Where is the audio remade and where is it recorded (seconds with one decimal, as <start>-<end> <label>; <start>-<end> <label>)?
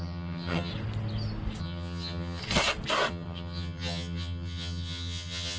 0.0-0.7 remade; 0.7-1.6 recorded; 1.6-2.4 remade; 2.4-3.1 recorded; 3.1-5.6 remade